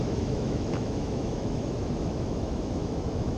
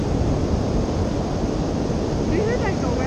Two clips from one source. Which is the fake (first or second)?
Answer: first